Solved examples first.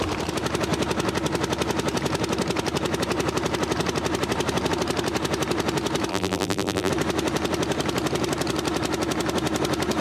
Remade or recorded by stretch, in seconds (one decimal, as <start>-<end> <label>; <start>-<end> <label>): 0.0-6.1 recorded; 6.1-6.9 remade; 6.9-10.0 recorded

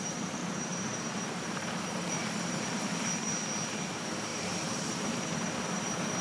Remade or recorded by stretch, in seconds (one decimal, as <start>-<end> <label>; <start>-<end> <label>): 0.0-2.2 remade; 2.2-3.9 recorded; 3.9-6.2 remade

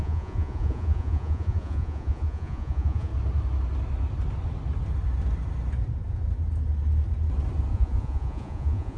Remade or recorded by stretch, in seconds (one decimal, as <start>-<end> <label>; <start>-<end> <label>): 0.0-3.1 remade; 3.1-7.7 recorded; 7.7-9.0 remade

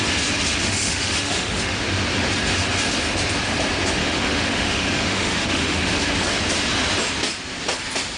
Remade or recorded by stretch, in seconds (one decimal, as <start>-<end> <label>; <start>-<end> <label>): 0.0-0.6 recorded; 0.6-1.8 remade; 1.8-4.0 recorded; 4.0-6.1 remade; 6.1-8.2 recorded

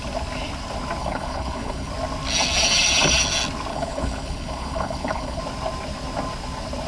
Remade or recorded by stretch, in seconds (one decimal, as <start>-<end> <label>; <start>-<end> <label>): 0.0-1.0 recorded; 1.0-1.9 remade; 1.9-3.7 recorded; 3.7-5.4 remade; 5.4-6.9 recorded

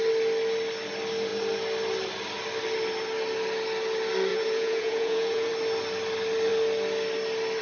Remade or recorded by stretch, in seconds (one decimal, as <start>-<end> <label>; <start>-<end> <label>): 0.0-4.3 recorded; 4.3-5.5 remade; 5.5-7.6 recorded

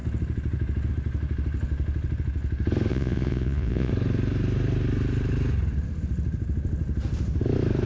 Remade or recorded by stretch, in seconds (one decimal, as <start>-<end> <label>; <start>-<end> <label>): 0.0-2.9 recorded; 2.9-3.9 remade; 3.9-7.9 recorded